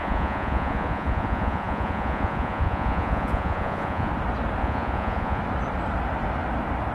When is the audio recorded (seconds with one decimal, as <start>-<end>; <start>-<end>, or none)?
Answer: 4.1-4.6; 5.4-6.9

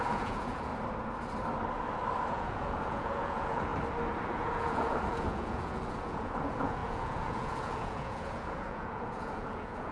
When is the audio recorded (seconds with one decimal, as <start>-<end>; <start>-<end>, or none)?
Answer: 0.7-2.3; 3.7-4.3

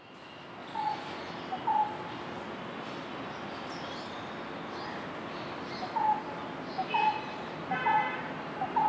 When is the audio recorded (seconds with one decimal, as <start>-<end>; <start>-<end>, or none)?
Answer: 0.0-0.6; 1.3-8.9

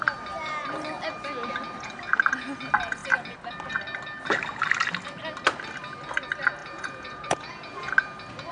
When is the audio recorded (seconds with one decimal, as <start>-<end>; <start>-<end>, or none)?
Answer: 0.0-6.6; 7.9-8.5

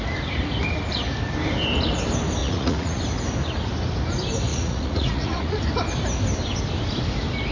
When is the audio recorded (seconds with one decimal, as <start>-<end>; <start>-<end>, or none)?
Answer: 0.0-2.4; 3.0-4.5; 5.6-7.5

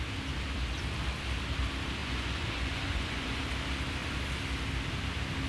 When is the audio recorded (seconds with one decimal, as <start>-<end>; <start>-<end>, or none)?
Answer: 0.0-2.0; 3.4-5.5

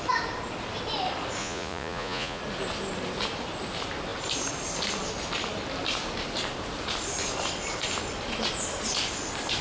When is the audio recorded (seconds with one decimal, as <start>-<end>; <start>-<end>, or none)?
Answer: 0.0-1.4; 2.4-9.6